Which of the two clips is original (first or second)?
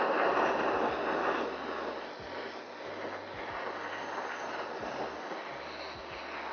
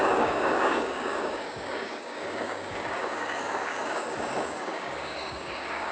first